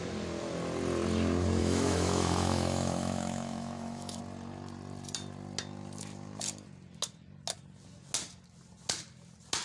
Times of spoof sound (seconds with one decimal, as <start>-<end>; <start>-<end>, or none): 1.6-4.2